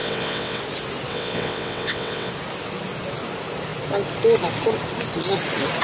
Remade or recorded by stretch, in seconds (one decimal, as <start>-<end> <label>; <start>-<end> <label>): 0.0-0.6 remade; 0.6-1.1 recorded; 1.1-2.3 remade; 2.3-5.8 recorded

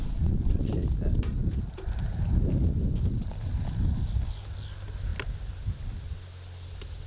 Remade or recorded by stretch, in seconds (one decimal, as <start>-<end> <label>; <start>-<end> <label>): 0.0-0.7 remade; 0.7-7.1 recorded

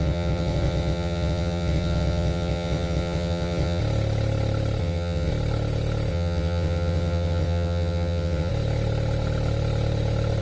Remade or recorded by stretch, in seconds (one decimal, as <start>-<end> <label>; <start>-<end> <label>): 0.0-3.8 remade; 3.8-4.8 recorded; 4.8-5.3 remade; 5.3-6.1 recorded; 6.1-8.5 remade; 8.5-10.4 recorded

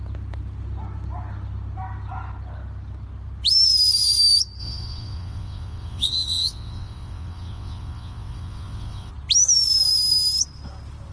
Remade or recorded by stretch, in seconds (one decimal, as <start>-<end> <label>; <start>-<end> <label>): 0.0-4.6 recorded; 4.6-9.1 remade; 9.1-11.1 recorded

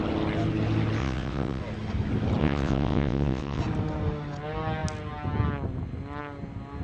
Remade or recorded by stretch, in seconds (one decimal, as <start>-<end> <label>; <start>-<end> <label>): 0.0-1.0 recorded; 1.0-1.6 remade; 1.6-2.4 recorded; 2.4-3.6 remade; 3.6-6.8 recorded